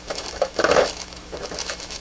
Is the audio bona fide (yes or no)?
no